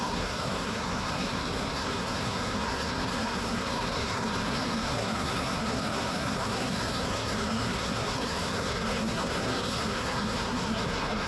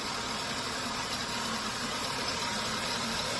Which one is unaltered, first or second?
second